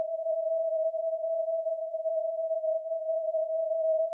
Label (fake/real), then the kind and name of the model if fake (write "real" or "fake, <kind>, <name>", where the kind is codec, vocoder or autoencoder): fake, vocoder, BigVGAN v2